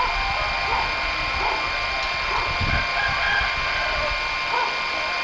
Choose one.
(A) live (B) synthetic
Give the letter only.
A